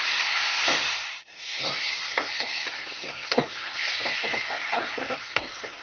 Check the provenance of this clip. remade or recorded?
remade